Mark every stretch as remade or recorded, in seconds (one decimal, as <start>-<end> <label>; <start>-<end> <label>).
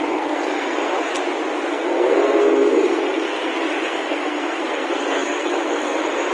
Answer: 0.0-1.1 remade; 1.1-1.7 recorded; 1.7-6.3 remade